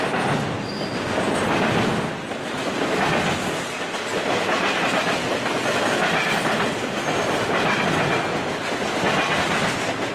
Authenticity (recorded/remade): recorded